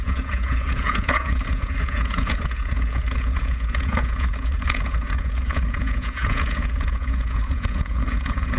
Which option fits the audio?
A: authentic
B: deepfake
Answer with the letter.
B